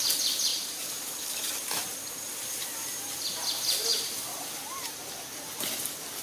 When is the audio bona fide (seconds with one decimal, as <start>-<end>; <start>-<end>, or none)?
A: 0.0-0.5; 1.5-3.9; 5.3-6.2